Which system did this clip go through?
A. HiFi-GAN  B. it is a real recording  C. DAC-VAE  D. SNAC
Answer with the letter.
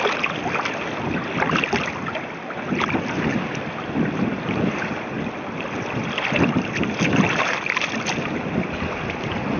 B